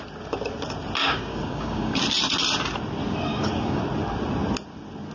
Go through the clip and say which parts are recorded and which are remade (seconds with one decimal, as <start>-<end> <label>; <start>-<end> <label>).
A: 0.0-1.0 recorded; 1.0-2.0 remade; 2.0-3.3 recorded; 3.3-3.8 remade; 3.8-5.1 recorded